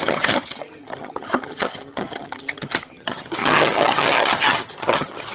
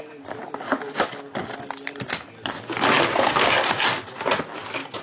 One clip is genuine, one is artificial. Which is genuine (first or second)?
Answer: second